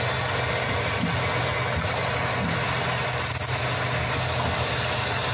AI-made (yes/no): no